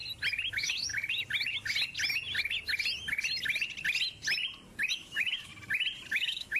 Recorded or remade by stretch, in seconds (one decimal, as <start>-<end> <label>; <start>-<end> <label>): 0.0-0.5 recorded; 0.5-0.9 remade; 0.9-4.9 recorded; 4.9-5.5 remade; 5.5-6.1 recorded; 6.1-6.6 remade